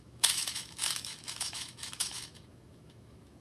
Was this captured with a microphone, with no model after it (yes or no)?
no